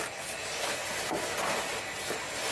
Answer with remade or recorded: recorded